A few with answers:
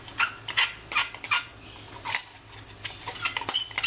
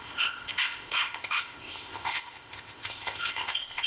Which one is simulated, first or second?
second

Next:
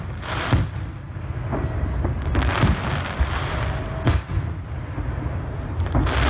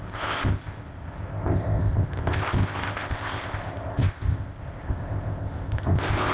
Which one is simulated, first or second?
second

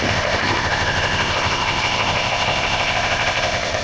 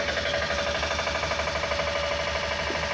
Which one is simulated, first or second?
first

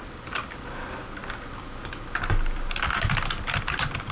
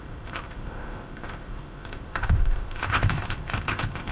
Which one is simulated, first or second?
second